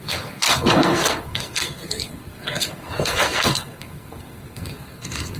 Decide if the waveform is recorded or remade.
remade